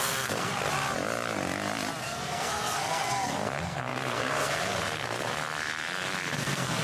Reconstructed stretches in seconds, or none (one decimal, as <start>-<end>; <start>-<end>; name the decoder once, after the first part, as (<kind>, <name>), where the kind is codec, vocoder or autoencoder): 0.0-0.5 (codec, SNAC); 2.0-6.8